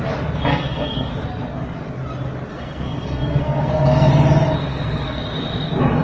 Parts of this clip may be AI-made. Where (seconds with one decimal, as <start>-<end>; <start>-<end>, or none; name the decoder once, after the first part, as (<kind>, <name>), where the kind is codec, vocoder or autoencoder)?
0.5-1.1 (codec, SNAC); 2.5-4.1; 4.6-5.2